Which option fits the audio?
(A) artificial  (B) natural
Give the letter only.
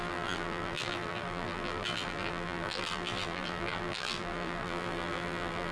A